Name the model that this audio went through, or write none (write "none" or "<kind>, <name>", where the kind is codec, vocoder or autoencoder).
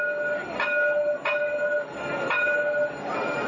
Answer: none